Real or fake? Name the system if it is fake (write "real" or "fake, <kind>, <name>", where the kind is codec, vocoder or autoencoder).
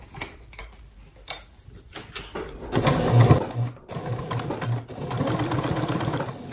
real